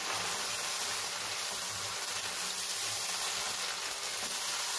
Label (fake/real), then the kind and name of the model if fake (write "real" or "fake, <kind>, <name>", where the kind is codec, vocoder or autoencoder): real